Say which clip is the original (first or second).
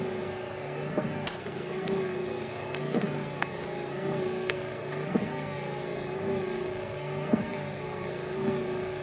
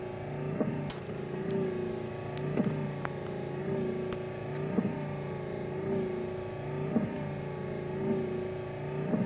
second